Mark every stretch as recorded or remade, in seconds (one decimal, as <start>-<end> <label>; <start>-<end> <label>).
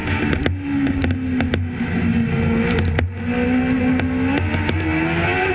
0.0-5.5 recorded